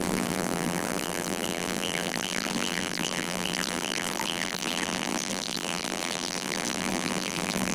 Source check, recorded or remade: remade